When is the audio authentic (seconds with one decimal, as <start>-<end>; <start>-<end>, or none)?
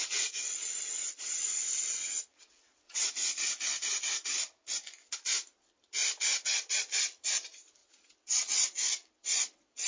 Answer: 3.1-7.8